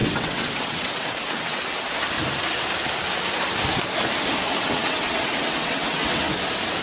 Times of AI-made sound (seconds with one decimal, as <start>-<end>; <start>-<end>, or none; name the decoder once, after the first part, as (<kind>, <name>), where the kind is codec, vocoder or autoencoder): 0.0-1.8 (vocoder, WaveNeXt); 4.5-6.2

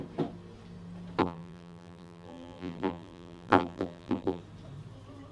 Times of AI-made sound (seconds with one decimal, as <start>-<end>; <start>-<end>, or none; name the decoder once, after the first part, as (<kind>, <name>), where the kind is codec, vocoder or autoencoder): 1.2-4.4 (vocoder, BigVGAN v2)

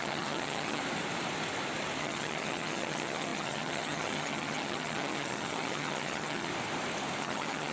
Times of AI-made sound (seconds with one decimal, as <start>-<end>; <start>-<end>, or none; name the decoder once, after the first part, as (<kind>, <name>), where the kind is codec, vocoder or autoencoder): 0.0-0.8 (vocoder, HiFi-GAN); 2.0-6.5; 7.2-7.7

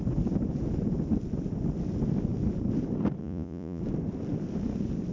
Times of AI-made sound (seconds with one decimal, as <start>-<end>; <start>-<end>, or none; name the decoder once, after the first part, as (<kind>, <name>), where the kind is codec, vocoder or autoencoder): 3.2-3.8 (vocoder, Vocos)